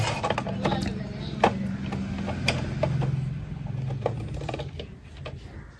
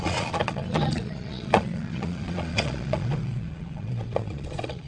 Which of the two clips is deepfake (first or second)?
second